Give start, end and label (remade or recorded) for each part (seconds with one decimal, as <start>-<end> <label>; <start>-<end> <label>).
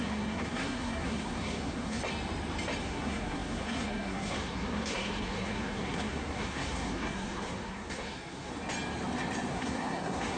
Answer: 0.0-2.0 remade; 2.0-2.8 recorded; 2.8-8.5 remade; 8.5-9.5 recorded; 9.5-10.4 remade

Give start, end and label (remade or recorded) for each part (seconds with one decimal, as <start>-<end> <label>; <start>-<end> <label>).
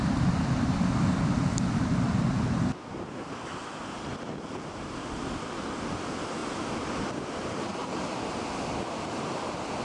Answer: 0.0-9.8 recorded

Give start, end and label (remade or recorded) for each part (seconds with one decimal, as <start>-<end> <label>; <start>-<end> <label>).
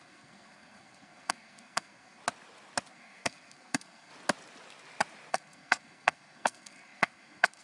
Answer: 0.0-2.2 remade; 2.2-2.9 recorded; 2.9-4.1 remade; 4.1-5.3 recorded; 5.3-7.6 remade